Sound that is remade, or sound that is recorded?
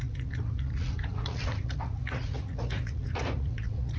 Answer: remade